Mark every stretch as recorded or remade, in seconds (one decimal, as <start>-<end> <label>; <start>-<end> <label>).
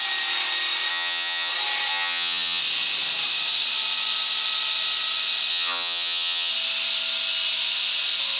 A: 0.0-0.9 recorded; 0.9-1.5 remade; 1.5-1.9 recorded; 1.9-2.6 remade; 2.6-5.5 recorded; 5.5-6.5 remade; 6.5-8.4 recorded